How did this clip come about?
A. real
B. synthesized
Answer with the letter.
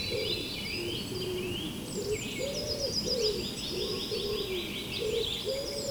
A